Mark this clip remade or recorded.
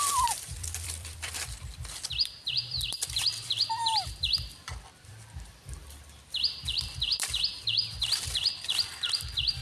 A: remade